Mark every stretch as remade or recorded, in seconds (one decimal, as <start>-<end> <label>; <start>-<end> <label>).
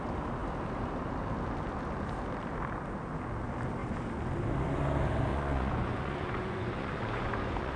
0.0-5.3 recorded; 5.3-7.8 remade